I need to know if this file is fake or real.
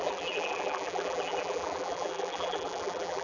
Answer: fake